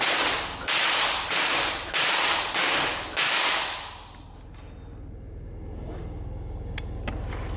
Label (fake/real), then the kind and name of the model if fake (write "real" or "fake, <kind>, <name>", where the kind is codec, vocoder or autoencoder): real